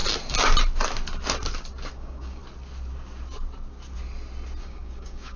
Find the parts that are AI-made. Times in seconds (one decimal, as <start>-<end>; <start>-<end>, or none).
1.9-2.4; 4.6-5.4